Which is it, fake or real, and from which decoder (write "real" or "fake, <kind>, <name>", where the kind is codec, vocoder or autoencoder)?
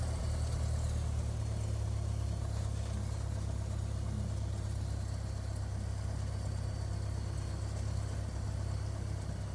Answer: real